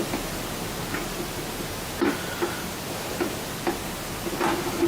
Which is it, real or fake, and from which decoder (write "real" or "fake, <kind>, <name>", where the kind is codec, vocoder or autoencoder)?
real